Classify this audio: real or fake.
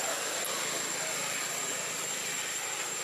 real